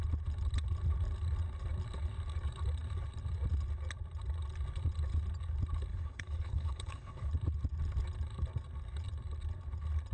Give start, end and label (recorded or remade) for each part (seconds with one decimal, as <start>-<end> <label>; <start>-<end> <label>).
0.0-5.9 recorded; 5.9-7.3 remade; 7.3-10.1 recorded